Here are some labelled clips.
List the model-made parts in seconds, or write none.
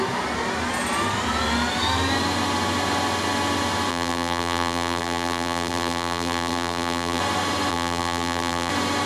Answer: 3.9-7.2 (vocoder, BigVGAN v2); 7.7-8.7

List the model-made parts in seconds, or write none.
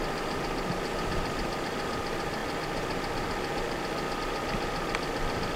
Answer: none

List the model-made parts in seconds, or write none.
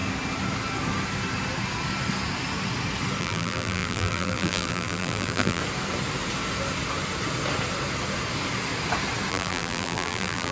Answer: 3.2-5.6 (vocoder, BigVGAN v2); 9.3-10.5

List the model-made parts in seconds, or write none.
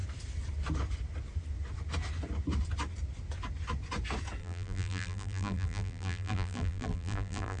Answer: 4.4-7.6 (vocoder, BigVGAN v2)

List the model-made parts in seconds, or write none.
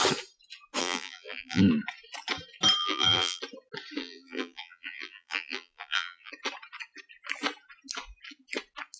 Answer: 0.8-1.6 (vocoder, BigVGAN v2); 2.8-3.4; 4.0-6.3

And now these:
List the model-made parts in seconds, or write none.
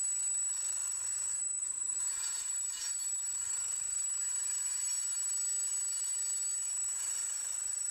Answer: 1.6-5.0 (vocoder, BigVGAN v2)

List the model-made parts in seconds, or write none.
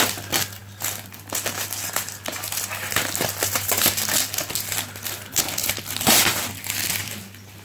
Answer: 0.6-3.7 (vocoder, BigVGAN v2)